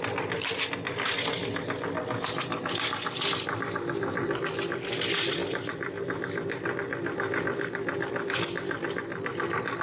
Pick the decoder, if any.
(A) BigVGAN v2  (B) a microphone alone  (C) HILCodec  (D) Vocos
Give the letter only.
B